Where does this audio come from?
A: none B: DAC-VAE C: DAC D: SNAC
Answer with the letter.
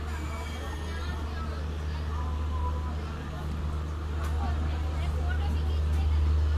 A